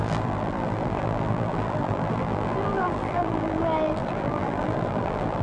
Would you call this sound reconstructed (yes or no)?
yes